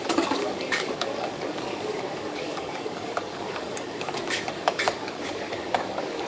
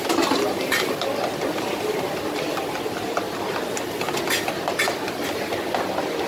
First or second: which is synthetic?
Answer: first